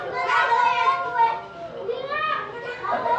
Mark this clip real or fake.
real